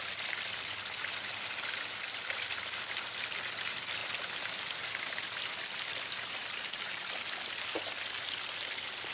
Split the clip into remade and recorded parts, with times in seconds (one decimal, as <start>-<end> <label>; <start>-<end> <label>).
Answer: 0.0-9.1 recorded